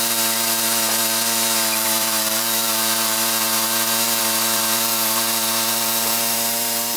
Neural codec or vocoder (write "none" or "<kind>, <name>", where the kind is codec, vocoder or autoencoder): vocoder, BigVGAN v2